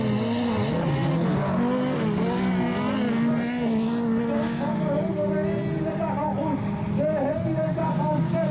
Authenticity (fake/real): real